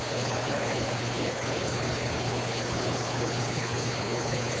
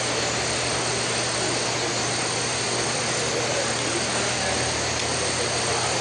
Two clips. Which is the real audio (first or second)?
second